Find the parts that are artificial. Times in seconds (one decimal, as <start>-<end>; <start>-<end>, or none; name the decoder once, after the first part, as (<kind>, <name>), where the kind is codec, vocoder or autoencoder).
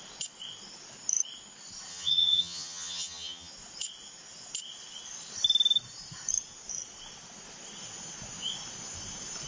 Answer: 1.9-3.5 (vocoder, HiFi-GAN)